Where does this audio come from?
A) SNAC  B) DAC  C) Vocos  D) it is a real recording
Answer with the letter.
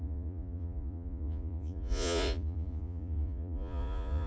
C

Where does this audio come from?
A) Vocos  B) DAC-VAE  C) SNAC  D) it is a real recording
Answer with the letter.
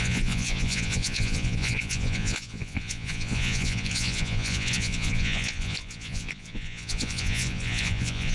A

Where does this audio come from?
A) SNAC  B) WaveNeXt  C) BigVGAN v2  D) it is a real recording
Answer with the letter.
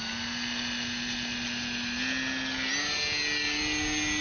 D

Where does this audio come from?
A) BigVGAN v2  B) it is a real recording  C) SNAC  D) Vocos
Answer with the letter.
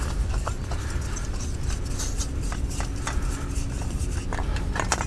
B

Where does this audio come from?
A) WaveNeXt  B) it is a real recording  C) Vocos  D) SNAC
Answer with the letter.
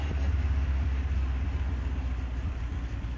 B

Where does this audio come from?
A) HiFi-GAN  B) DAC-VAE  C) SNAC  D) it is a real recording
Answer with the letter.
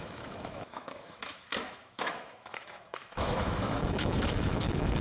B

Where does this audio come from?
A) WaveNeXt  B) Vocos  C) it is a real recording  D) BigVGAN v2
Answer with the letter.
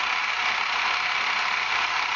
C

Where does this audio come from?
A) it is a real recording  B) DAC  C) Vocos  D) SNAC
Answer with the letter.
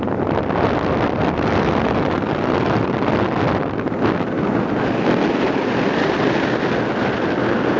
A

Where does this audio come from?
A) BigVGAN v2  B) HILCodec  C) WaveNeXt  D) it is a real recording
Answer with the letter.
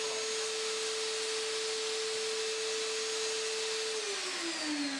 D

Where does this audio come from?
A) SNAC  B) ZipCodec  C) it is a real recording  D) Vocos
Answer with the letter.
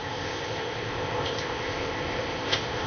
B